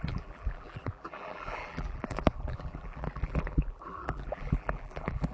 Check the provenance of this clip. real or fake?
fake